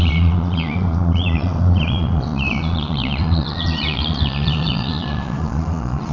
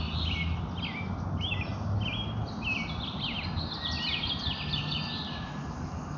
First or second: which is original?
second